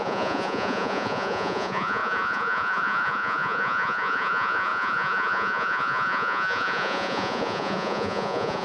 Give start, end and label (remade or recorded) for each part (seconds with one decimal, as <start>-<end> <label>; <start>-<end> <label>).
0.0-8.6 remade